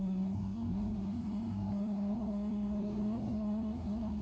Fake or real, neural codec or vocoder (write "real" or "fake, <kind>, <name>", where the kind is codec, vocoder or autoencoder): fake, codec, SNAC